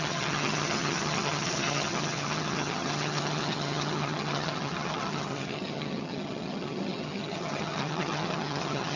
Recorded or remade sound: remade